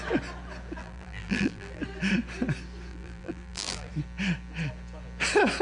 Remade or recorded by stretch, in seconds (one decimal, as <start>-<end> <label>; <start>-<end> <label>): 0.0-0.8 recorded; 0.8-1.8 remade; 1.8-2.9 recorded; 2.9-3.9 remade; 3.9-5.6 recorded